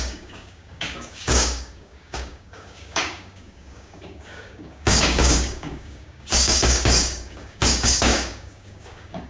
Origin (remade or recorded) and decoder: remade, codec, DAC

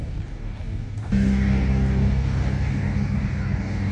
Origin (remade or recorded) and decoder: remade, codec, DAC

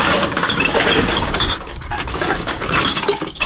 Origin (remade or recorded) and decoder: remade, codec, DAC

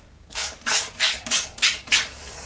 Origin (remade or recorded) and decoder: remade, codec, DAC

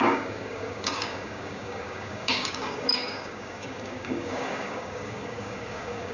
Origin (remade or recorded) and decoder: remade, codec, DAC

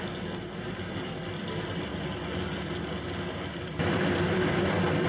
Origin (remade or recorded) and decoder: recorded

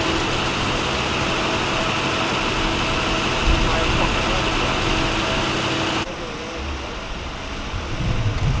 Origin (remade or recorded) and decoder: recorded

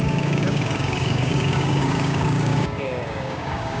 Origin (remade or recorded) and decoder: remade, codec, DAC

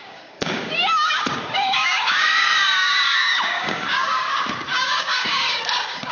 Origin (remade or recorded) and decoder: remade, codec, DAC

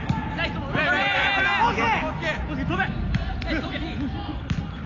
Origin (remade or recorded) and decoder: recorded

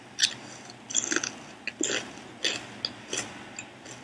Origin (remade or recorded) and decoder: recorded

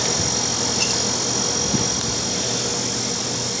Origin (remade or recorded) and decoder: recorded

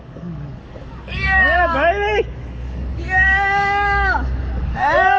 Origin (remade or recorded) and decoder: remade, codec, DAC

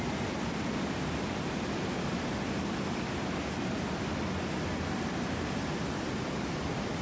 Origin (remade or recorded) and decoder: recorded